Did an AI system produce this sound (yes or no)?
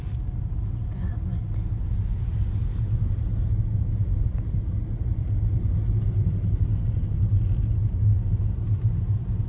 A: no